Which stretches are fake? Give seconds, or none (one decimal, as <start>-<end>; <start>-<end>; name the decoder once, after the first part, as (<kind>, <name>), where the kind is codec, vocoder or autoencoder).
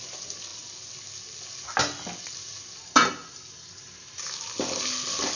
none